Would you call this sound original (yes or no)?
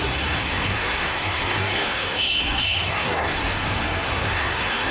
no